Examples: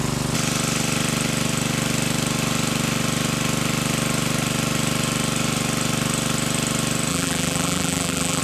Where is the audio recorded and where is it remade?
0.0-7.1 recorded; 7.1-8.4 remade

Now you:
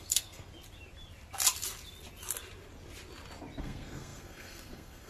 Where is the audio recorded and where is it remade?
0.0-0.5 remade; 0.5-3.6 recorded; 3.6-5.1 remade